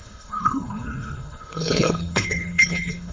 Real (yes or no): no